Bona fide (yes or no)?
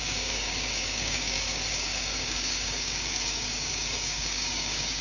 no